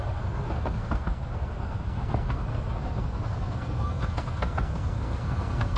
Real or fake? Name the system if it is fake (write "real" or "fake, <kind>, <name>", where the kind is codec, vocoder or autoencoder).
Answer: fake, codec, SNAC